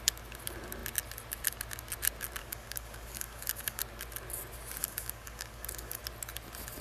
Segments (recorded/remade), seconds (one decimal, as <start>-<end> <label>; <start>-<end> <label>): 0.0-2.4 recorded; 2.4-3.8 remade; 3.8-4.8 recorded; 4.8-6.0 remade; 6.0-6.8 recorded